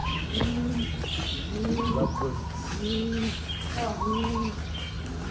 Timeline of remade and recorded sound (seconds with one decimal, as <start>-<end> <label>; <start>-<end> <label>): 0.0-0.5 remade; 0.5-5.3 recorded

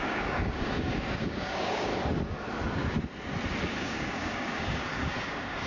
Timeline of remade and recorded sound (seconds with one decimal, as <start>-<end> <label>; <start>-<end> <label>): 0.0-1.9 remade; 1.9-3.6 recorded; 3.6-5.7 remade

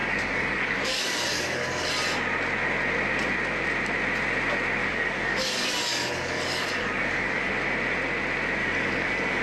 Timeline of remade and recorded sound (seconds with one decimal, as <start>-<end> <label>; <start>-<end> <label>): 0.0-1.9 remade; 1.9-4.8 recorded; 4.8-7.5 remade; 7.5-8.6 recorded; 8.6-9.4 remade

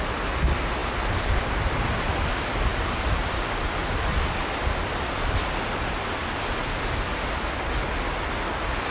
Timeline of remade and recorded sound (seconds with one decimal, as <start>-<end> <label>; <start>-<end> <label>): 0.0-8.9 recorded

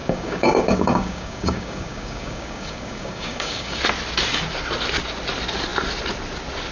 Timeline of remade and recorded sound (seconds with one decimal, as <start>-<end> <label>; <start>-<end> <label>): 0.0-3.8 remade; 3.8-6.7 recorded

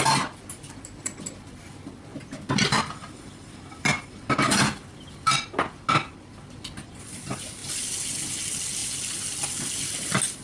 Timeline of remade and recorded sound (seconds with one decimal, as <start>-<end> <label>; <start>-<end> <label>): 0.0-10.4 recorded

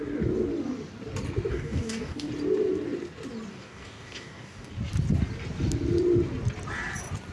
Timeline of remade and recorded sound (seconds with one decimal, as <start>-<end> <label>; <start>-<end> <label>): 0.0-1.5 recorded; 1.5-2.3 remade; 2.3-3.5 recorded; 3.5-4.7 remade; 4.7-7.3 recorded

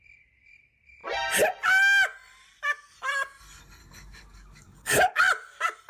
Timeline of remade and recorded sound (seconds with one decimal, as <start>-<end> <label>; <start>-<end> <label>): 0.0-3.8 recorded; 3.8-5.2 remade; 5.2-5.9 recorded